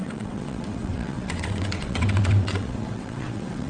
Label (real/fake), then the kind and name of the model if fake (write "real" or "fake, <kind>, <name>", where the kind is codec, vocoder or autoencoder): fake, vocoder, WaveNeXt